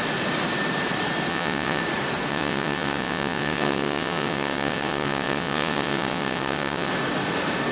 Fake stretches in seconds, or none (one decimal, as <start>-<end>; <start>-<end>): 1.3-1.8; 2.3-6.9